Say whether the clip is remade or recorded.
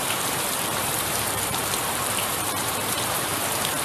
remade